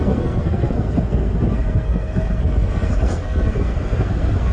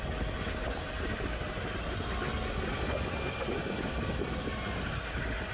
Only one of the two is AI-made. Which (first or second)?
first